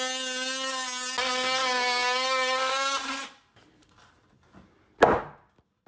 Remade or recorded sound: recorded